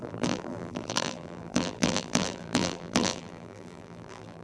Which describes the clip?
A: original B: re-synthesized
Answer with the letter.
B